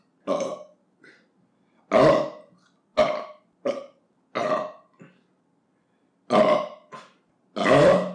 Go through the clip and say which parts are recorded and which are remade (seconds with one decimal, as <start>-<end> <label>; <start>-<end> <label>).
0.0-8.1 recorded